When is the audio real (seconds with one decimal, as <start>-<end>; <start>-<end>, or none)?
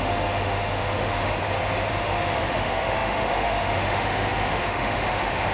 1.4-1.9